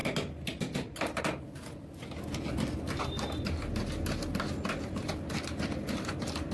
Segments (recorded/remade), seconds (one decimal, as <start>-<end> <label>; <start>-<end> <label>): 0.0-6.5 recorded